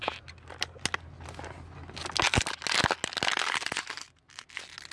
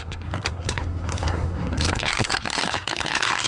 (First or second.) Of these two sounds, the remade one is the second